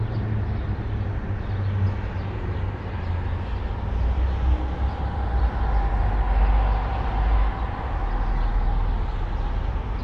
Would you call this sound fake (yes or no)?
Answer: no